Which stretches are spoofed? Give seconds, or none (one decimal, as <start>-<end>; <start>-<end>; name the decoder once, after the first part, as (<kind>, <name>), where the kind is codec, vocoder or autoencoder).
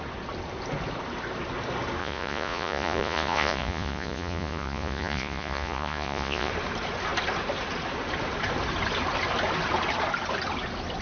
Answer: 2.0-6.5 (vocoder, Vocos)